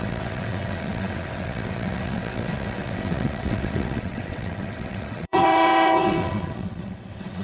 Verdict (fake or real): fake